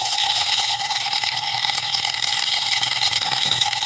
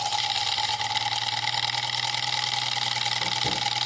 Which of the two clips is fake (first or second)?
first